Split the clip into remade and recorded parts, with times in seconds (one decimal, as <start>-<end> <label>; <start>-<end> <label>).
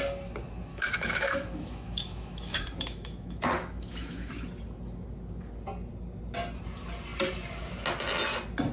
0.0-0.7 recorded; 0.7-4.3 remade; 4.3-8.7 recorded